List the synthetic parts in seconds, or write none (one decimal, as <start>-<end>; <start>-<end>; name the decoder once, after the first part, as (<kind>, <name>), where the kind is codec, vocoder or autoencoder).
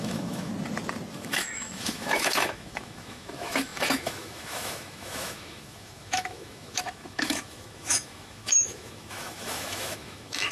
0.0-0.5 (autoencoder, DAC-VAE); 1.1-10.5